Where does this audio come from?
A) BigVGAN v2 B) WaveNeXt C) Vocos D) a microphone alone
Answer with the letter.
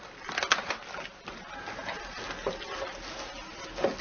D